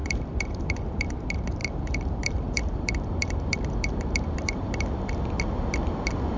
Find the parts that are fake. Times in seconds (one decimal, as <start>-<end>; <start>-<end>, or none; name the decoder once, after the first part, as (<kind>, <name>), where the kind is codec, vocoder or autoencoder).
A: 0.0-1.1 (vocoder, BigVGAN v2); 1.6-5.1